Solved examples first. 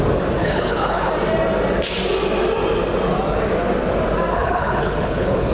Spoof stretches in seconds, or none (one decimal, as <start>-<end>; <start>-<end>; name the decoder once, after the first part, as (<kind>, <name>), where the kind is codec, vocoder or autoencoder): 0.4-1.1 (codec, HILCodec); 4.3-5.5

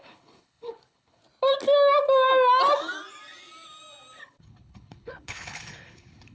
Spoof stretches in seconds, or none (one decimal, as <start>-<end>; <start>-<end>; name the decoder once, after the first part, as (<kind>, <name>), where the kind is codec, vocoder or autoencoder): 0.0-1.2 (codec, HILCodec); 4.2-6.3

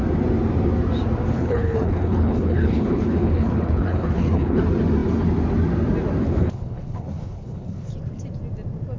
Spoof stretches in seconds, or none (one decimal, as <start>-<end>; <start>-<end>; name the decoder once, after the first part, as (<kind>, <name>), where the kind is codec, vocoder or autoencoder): 1.3-4.6 (codec, HILCodec); 6.2-7.9